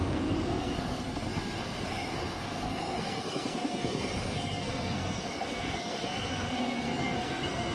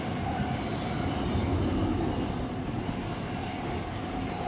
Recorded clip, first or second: second